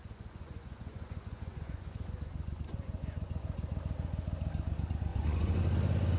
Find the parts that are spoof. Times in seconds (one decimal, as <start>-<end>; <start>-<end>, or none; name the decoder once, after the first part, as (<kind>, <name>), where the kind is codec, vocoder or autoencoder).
0.0-3.7 (vocoder, Vocos); 5.1-5.6